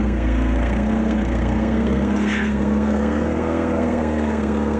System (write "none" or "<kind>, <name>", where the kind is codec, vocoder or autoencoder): codec, SNAC